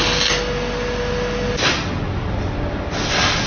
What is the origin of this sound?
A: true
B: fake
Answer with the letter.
A